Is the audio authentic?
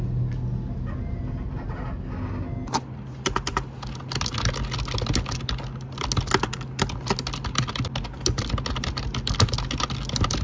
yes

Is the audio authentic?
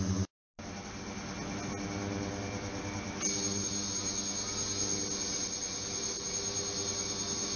yes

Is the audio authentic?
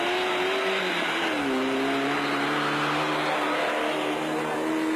yes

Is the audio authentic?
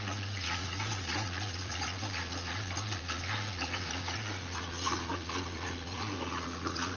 no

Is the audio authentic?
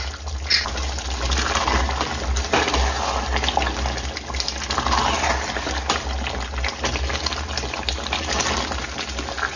yes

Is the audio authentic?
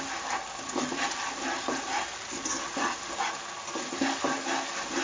yes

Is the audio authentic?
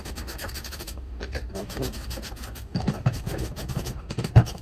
no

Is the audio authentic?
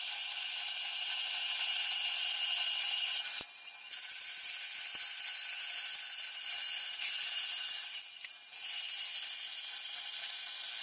yes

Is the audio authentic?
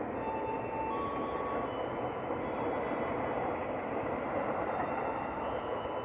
yes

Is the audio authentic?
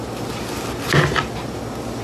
yes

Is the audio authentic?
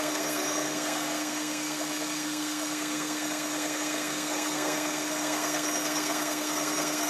no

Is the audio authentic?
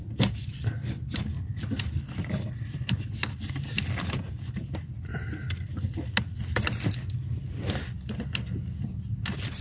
yes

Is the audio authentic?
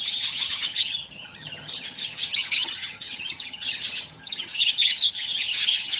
no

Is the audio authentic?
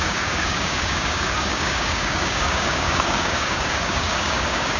no